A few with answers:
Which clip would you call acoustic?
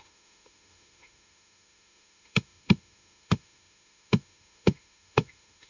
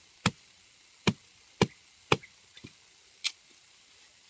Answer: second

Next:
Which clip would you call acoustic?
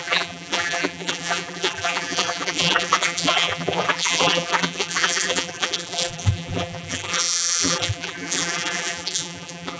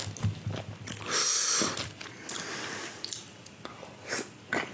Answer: second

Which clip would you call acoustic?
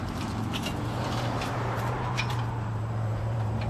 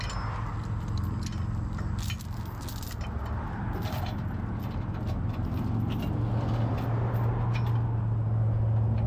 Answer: second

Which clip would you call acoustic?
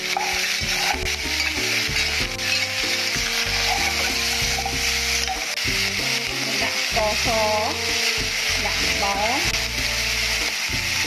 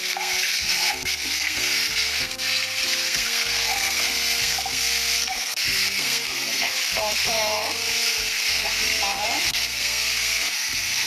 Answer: first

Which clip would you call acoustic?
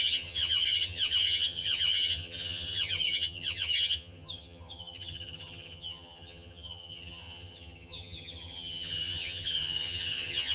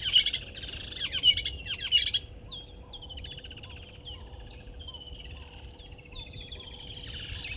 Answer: second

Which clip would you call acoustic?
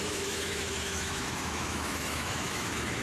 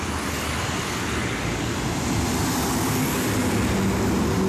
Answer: second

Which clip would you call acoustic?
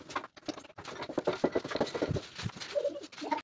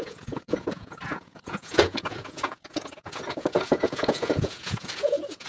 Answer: first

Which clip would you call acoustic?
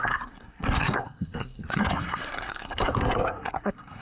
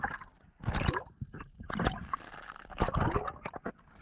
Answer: second